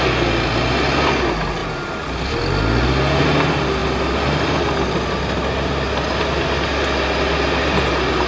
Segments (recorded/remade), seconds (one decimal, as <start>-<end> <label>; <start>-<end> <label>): 0.0-8.3 recorded